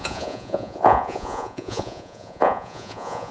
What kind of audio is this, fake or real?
fake